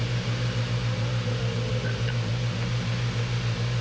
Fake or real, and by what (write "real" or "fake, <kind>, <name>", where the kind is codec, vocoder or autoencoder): real